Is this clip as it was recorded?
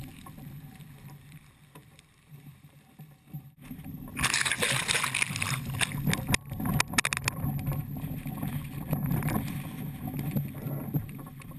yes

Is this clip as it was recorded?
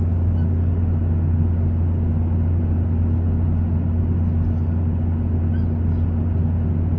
yes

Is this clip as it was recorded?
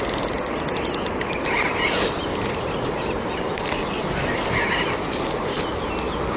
yes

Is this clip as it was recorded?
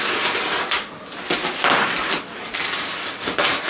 yes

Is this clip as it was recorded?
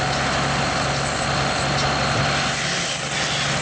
yes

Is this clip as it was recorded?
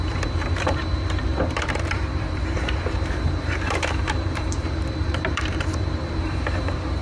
no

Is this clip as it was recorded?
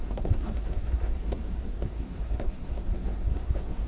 no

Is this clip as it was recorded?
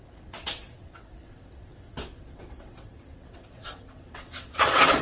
no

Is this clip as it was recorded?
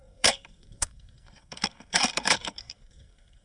no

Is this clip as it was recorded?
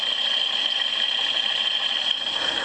no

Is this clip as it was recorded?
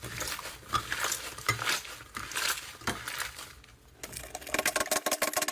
yes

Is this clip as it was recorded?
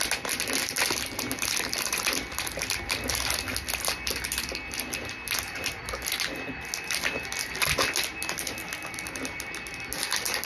yes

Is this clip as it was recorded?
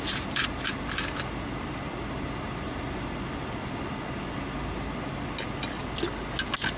yes